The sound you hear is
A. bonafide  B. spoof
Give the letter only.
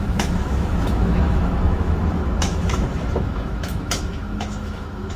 B